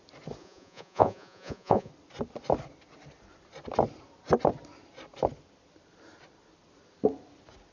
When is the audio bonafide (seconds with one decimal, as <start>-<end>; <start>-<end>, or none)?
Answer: 0.0-0.4; 1.9-7.7